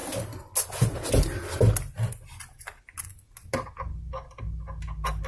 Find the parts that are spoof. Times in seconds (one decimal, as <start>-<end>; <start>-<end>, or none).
none